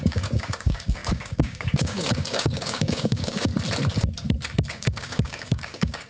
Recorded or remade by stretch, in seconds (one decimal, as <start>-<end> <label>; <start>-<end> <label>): 0.0-3.5 remade; 3.5-4.7 recorded; 4.7-6.1 remade